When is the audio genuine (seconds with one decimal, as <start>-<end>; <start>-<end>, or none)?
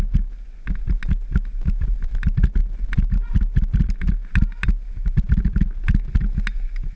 0.0-7.0